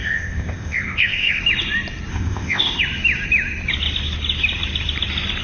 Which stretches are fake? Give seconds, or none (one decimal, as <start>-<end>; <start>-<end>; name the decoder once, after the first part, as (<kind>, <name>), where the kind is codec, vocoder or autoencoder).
0.0-1.4 (codec, ZipCodec); 2.1-2.8